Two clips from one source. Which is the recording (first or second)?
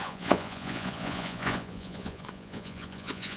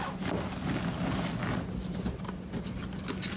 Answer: second